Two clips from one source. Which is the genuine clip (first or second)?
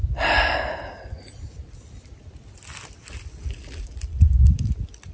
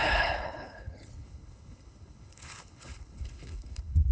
first